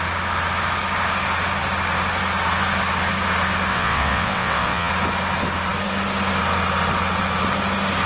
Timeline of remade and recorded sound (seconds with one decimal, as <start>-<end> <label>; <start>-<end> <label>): 0.0-3.7 recorded; 3.7-4.9 remade; 4.9-8.1 recorded